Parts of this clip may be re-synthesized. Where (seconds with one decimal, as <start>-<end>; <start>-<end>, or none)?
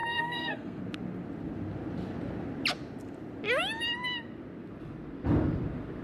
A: 0.0-0.8